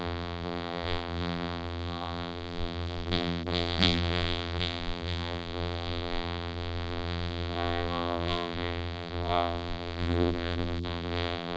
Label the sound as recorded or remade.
remade